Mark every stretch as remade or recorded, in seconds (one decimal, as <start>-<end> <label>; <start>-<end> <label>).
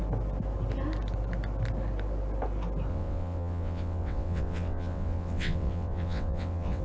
0.0-2.9 recorded; 2.9-6.8 remade